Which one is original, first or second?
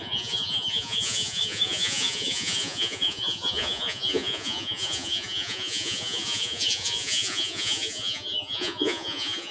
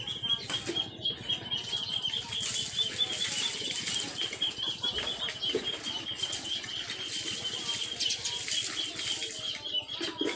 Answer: second